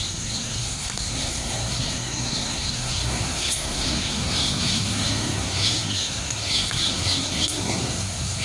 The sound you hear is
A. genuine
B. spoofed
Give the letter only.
B